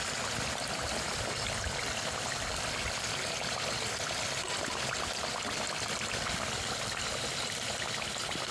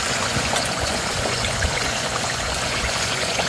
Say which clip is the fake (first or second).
second